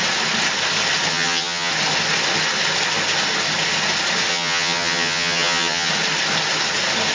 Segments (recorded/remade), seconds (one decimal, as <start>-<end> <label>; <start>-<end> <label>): 0.0-1.1 recorded; 1.1-1.7 remade; 1.7-4.3 recorded; 4.3-5.9 remade; 5.9-7.1 recorded